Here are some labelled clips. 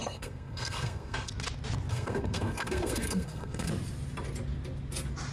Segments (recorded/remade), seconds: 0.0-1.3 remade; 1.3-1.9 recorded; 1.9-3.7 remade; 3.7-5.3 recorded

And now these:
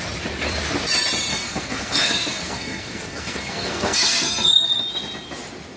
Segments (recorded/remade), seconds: 0.0-1.3 recorded; 1.3-4.8 remade; 4.8-5.8 recorded